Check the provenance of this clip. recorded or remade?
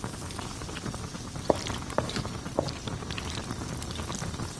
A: recorded